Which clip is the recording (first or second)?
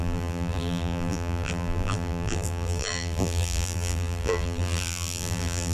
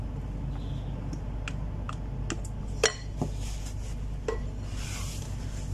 second